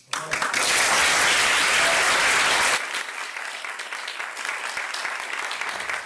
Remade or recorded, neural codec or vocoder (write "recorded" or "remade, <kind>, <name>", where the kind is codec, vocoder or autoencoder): recorded